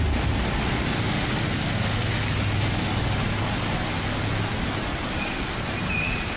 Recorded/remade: recorded